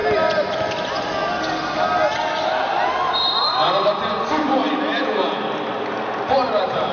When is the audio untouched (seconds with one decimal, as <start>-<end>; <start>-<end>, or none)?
0.0-4.9; 5.4-6.9